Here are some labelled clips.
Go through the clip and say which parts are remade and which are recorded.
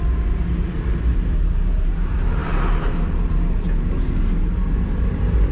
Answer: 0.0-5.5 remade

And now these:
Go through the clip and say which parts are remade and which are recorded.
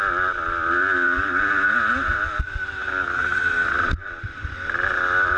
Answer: 0.0-2.8 remade; 2.8-3.4 recorded; 3.4-5.4 remade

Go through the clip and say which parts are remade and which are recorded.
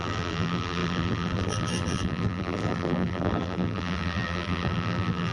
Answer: 0.0-5.3 remade